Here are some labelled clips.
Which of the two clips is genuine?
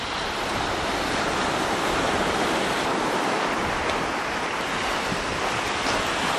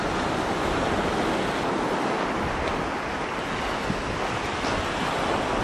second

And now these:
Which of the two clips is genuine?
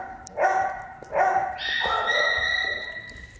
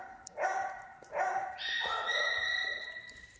first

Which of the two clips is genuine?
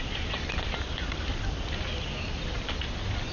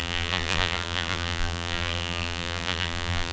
first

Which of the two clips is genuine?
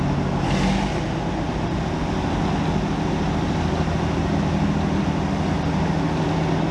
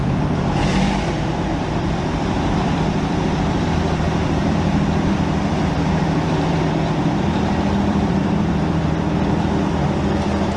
first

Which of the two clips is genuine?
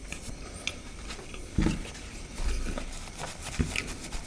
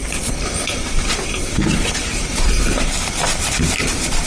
first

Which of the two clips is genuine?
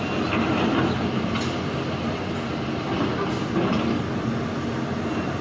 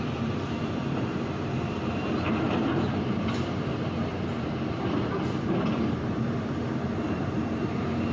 first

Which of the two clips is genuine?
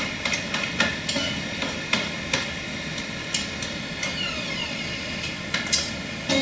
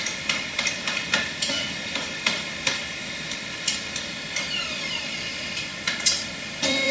first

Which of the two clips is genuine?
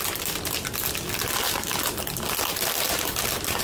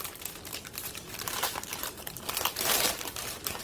first